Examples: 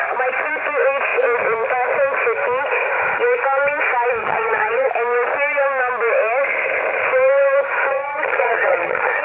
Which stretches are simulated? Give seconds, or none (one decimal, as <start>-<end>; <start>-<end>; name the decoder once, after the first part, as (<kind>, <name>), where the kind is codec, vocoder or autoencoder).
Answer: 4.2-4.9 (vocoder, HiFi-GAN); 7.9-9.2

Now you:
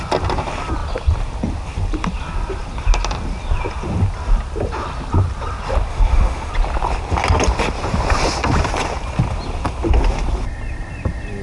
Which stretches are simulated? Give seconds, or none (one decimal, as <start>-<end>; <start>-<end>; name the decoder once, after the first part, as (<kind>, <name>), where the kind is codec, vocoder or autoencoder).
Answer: 5.9-6.5 (autoencoder, DAC-VAE)

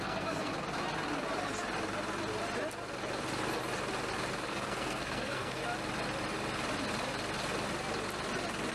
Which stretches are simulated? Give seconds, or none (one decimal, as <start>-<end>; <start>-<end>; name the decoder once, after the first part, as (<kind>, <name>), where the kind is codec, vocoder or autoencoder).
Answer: 0.0-0.5 (codec, SNAC); 4.5-5.6

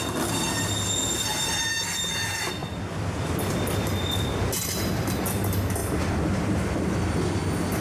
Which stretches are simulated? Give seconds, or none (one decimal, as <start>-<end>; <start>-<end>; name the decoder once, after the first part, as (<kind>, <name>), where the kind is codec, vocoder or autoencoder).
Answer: 2.6-3.3 (vocoder, BigVGAN v2); 5.8-7.0